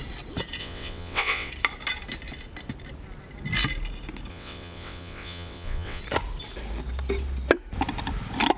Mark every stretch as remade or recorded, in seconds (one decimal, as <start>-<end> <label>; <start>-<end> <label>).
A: 0.0-0.6 recorded; 0.6-1.5 remade; 1.5-4.3 recorded; 4.3-6.0 remade; 6.0-8.6 recorded